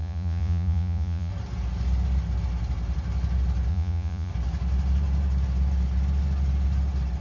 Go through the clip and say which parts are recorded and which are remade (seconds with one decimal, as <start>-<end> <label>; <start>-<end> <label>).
0.0-1.3 remade; 1.3-3.7 recorded; 3.7-4.3 remade; 4.3-7.2 recorded